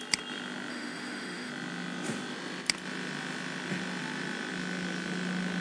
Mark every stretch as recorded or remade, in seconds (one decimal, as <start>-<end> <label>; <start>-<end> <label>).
0.0-0.7 recorded; 0.7-1.5 remade; 1.5-5.6 recorded